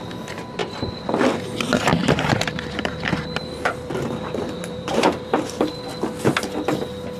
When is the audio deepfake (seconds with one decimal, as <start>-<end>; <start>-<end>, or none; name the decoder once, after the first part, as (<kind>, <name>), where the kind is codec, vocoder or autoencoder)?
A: 2.0-5.8 (vocoder, BigVGAN v2)